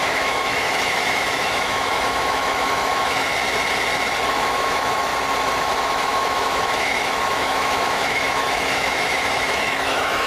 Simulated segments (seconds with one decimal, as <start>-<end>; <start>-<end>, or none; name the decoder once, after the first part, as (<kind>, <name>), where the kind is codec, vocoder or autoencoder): 0.0-3.3 (autoencoder, DAC-VAE); 4.3-5.1; 5.6-10.3